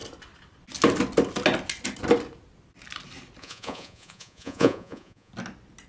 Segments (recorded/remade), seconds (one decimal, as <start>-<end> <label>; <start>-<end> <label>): 0.0-3.4 recorded; 3.4-5.3 remade; 5.3-5.9 recorded